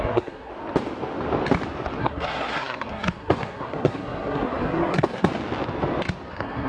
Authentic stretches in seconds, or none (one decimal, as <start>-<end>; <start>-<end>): 0.5-2.0; 5.3-6.3